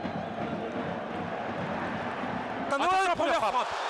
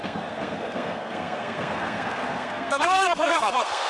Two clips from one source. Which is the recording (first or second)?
first